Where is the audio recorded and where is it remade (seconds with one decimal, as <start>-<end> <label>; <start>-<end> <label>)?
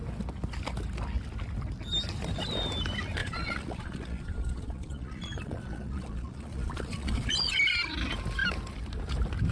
0.0-3.2 recorded; 3.2-7.5 remade; 7.5-9.5 recorded